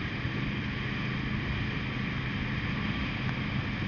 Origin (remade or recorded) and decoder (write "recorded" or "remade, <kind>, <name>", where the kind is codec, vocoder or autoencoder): recorded